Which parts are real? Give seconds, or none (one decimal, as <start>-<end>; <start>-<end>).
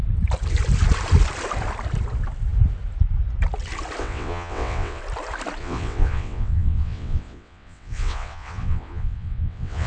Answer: 0.0-4.0; 5.0-5.6